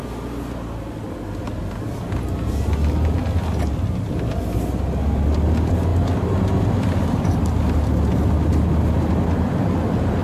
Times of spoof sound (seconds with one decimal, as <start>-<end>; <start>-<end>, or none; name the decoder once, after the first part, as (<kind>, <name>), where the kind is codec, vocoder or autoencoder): none